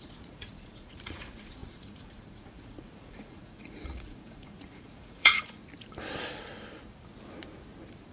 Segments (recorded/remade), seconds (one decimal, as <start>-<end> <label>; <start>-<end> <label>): 0.0-5.6 remade; 5.6-8.1 recorded